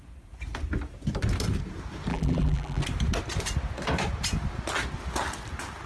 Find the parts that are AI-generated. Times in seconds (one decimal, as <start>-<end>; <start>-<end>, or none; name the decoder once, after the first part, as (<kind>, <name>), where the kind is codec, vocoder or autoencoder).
2.1-2.8 (vocoder, BigVGAN v2)